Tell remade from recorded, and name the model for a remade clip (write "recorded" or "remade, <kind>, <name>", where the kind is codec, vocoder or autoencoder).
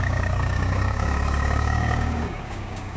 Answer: remade, codec, DAC